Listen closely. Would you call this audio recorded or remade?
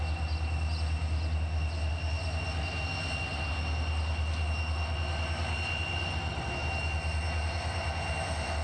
recorded